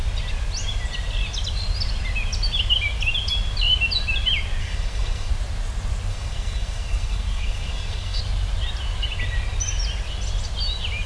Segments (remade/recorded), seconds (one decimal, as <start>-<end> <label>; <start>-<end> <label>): 0.0-4.6 recorded; 4.6-5.3 remade; 5.3-6.1 recorded; 6.1-8.2 remade; 8.2-11.1 recorded